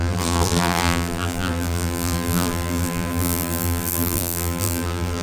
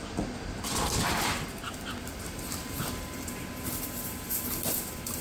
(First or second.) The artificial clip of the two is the first